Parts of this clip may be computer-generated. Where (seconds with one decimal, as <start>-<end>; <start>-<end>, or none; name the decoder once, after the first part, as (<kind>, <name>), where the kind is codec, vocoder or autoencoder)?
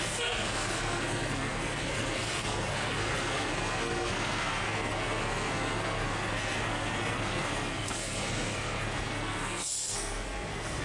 0.0-10.8 (codec, SNAC)